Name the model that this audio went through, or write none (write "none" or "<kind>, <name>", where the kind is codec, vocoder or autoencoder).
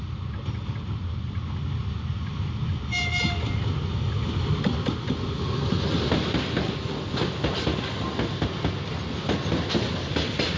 none